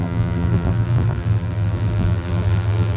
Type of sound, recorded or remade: remade